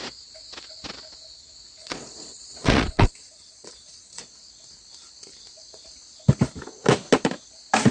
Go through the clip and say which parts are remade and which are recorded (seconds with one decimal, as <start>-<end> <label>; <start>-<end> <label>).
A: 0.0-1.8 recorded; 1.8-4.2 remade; 4.2-7.9 recorded